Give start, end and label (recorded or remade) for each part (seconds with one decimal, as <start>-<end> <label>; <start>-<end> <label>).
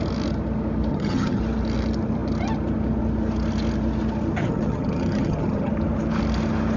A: 0.0-0.9 recorded; 0.9-1.4 remade; 1.4-4.4 recorded; 4.4-5.7 remade; 5.7-6.8 recorded